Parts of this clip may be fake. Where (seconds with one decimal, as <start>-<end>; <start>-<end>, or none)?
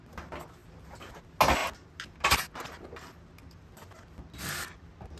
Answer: 0.6-1.2